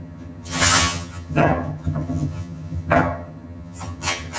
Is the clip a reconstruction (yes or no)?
yes